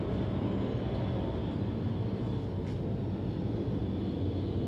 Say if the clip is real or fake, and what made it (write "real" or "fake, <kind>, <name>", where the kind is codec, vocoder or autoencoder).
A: real